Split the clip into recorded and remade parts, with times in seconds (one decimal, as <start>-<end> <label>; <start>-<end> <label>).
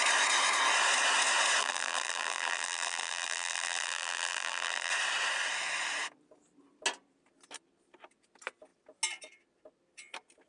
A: 0.0-1.6 recorded; 1.6-4.9 remade; 4.9-10.5 recorded